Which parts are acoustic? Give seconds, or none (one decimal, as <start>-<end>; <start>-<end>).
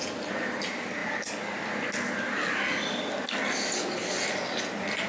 0.0-5.1